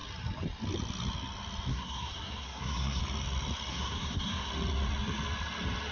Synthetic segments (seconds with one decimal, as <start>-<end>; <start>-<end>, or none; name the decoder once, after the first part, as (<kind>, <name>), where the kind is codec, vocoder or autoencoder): 1.7-3.0 (codec, SNAC); 3.7-4.5